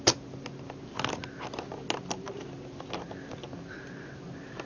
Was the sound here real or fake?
real